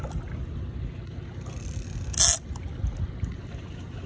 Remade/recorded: recorded